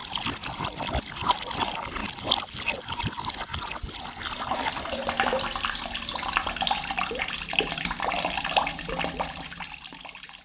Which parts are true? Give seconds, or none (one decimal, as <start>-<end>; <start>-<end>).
0.0-0.6; 2.0-4.3